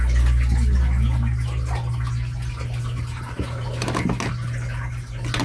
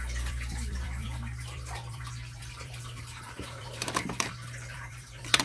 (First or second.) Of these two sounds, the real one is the first